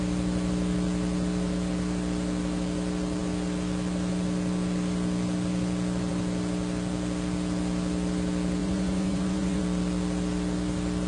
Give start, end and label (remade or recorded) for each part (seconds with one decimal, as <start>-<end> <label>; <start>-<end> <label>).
0.0-8.6 recorded; 8.6-9.6 remade; 9.6-11.1 recorded